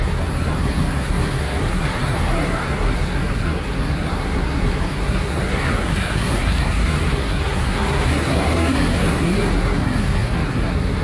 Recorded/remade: remade